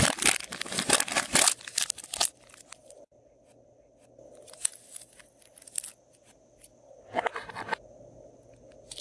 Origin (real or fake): real